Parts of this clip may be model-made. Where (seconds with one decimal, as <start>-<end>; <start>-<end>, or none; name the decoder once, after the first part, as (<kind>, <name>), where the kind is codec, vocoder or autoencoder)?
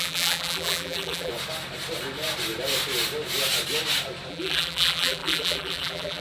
0.0-1.3 (vocoder, BigVGAN v2); 4.3-6.2